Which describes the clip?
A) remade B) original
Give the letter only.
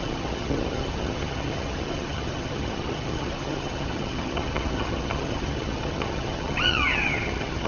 A